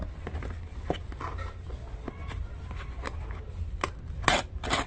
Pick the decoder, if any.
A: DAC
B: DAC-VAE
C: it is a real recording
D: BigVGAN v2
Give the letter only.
C